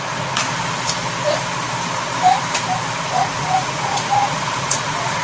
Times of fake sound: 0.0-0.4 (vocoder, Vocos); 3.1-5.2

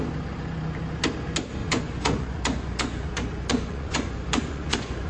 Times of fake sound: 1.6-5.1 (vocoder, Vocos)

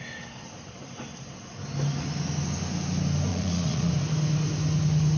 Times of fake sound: 3.3-3.9 (vocoder, Vocos)

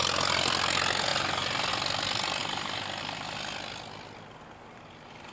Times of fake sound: none

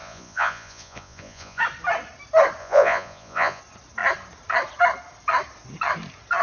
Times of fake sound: 0.0-1.6 (vocoder, Vocos); 2.6-3.6

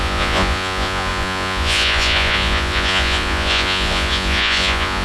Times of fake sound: 0.0-5.0 (vocoder, Vocos)

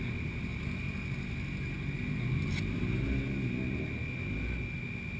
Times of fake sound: none

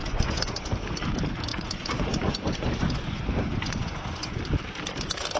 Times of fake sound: 0.0-0.7 (vocoder, Vocos); 1.5-4.4